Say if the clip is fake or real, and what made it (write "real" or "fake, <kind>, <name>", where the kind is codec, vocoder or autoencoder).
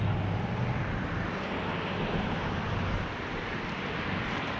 real